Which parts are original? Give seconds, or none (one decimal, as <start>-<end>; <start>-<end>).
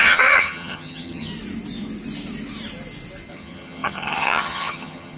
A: 1.3-3.3